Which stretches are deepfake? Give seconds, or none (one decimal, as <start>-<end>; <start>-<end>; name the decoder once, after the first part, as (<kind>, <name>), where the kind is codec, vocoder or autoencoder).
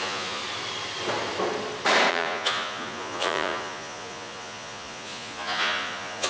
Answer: 0.0-0.4 (vocoder, Vocos); 2.1-6.3